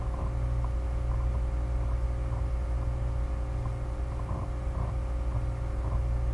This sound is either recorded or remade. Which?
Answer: recorded